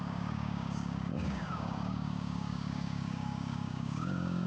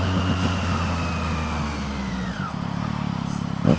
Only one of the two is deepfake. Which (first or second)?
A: first